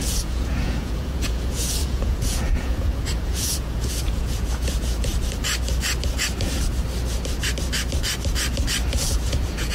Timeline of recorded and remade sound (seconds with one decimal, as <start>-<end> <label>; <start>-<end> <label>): 0.0-5.1 remade; 5.1-8.9 recorded; 8.9-9.7 remade